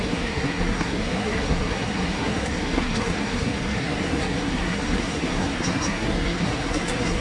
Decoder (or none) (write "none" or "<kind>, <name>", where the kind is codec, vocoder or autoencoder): codec, SNAC